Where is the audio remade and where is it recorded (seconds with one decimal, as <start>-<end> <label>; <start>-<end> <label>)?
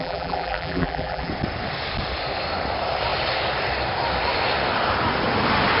0.0-1.3 remade; 1.3-5.8 recorded